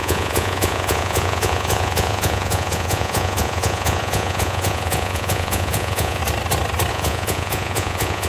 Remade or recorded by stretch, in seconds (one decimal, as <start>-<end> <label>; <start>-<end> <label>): 0.0-6.2 remade; 6.2-6.9 recorded; 6.9-8.3 remade